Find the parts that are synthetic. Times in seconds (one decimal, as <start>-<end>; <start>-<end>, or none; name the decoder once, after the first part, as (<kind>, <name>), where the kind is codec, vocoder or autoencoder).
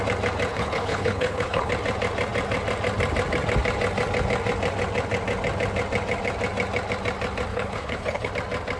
0.5-1.7 (codec, HILCodec); 7.5-8.3